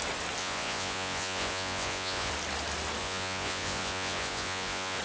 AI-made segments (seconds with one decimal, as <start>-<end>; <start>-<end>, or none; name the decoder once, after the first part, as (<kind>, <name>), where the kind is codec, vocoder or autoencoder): 0.4-2.3 (vocoder, Vocos); 3.0-5.0